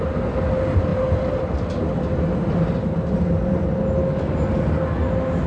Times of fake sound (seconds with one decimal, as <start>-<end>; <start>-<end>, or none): none